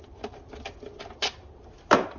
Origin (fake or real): real